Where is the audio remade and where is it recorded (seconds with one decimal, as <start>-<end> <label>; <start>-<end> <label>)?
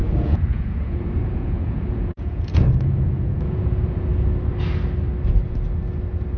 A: 0.0-4.1 remade; 4.1-6.4 recorded